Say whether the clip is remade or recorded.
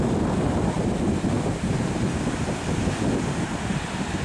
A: recorded